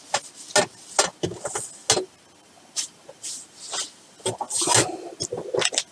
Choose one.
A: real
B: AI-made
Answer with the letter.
A